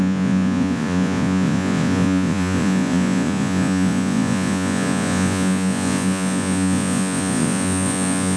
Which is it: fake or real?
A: fake